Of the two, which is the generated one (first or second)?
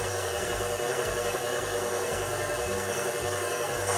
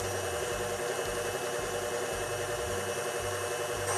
first